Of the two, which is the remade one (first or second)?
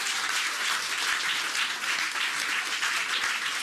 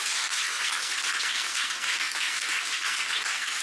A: second